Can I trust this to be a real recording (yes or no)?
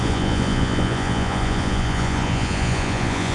no